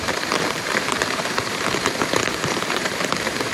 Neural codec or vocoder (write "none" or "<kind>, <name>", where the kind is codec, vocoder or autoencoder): vocoder, BigVGAN v2